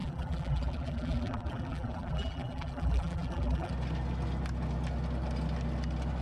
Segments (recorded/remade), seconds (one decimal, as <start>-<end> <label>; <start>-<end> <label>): 0.0-3.7 remade; 3.7-6.2 recorded